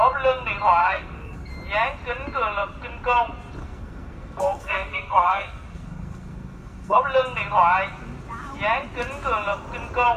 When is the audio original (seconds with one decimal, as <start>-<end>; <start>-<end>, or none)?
0.0-0.8; 1.5-3.6; 7.0-10.2